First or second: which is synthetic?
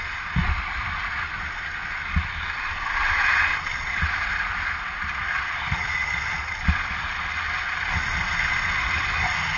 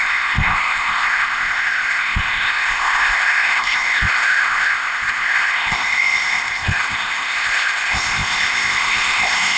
second